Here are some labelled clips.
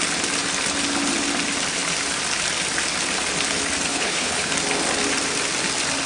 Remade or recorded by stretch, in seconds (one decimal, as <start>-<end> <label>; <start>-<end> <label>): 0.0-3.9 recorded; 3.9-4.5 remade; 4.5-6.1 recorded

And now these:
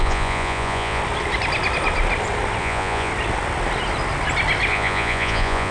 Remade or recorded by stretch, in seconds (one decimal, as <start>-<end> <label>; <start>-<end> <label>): 0.0-1.0 remade; 1.0-2.6 recorded; 2.6-3.1 remade; 3.1-4.7 recorded; 4.7-5.7 remade

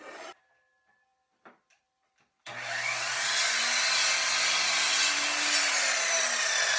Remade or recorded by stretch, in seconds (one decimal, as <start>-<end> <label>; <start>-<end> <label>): 0.0-6.8 recorded

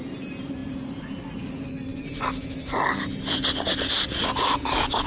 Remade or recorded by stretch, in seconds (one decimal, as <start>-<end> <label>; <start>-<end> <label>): 0.0-5.1 recorded